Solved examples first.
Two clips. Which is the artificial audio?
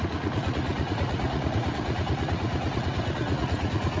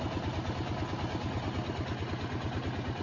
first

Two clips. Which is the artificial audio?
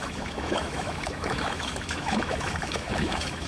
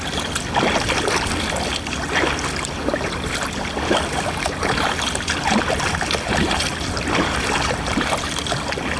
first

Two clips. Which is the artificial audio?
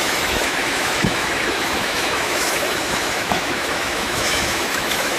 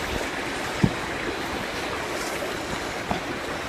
first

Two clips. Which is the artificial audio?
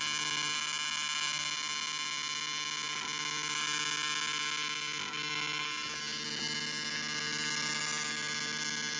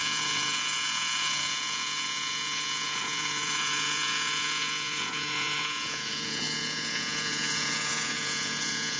second